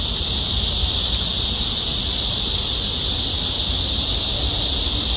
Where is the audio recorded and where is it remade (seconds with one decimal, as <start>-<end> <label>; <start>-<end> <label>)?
0.0-1.3 remade; 1.3-4.4 recorded; 4.4-5.2 remade

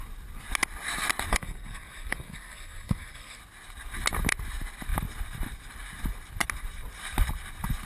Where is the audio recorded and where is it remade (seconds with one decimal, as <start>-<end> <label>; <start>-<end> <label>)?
0.0-1.3 recorded; 1.3-3.4 remade; 3.4-7.9 recorded

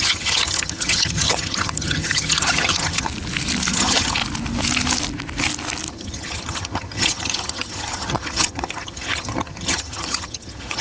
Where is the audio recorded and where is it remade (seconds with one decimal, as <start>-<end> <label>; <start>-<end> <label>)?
0.0-3.1 remade; 3.1-3.7 recorded; 3.7-4.2 remade; 4.2-5.9 recorded; 5.9-10.8 remade

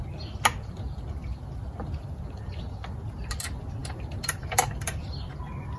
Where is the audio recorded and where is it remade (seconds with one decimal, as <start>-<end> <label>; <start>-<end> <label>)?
0.0-3.8 recorded; 3.8-5.3 remade; 5.3-5.8 recorded

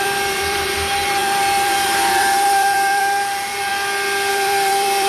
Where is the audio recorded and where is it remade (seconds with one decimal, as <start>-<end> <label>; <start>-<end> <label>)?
0.0-3.7 remade; 3.7-4.3 recorded; 4.3-5.1 remade

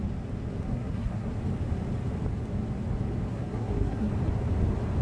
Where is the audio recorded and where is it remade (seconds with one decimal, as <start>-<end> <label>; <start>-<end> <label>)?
0.0-0.7 recorded; 0.7-1.3 remade; 1.3-3.3 recorded; 3.3-4.1 remade; 4.1-5.0 recorded

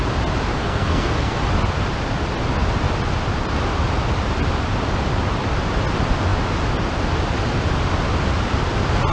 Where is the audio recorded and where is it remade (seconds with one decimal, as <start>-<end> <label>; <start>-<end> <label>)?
0.0-0.5 recorded; 0.5-1.4 remade; 1.4-9.1 recorded